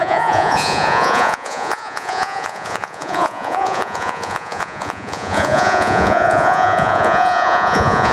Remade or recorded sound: remade